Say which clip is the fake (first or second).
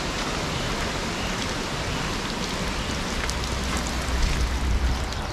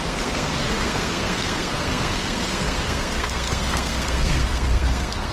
second